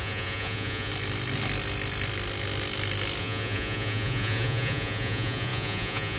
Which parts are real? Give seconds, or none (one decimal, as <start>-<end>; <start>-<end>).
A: 0.9-3.2